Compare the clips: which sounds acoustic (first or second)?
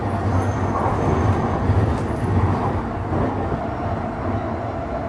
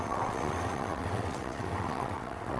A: first